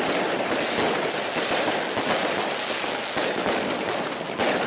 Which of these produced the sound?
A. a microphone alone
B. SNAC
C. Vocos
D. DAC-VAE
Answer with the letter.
A